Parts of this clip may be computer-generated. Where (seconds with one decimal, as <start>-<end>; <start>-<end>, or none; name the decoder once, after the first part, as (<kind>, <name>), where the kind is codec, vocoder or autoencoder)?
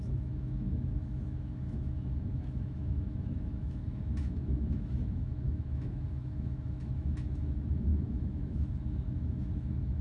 0.0-10.0 (autoencoder, DAC-VAE)